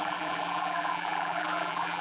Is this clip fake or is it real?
fake